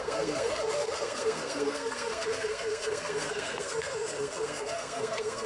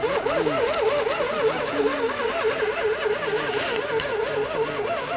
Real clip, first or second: second